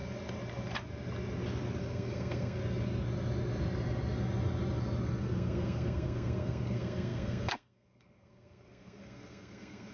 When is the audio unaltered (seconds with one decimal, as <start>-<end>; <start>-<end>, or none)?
0.0-1.8; 2.6-5.2